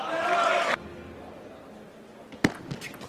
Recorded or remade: recorded